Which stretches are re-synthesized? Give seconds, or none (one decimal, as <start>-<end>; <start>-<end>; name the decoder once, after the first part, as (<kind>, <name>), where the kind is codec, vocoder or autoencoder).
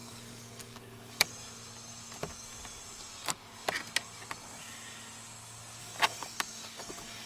0.0-1.3 (codec, DAC); 5.8-7.3